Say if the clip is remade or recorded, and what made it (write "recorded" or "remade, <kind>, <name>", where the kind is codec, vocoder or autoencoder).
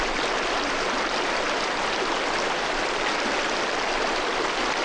recorded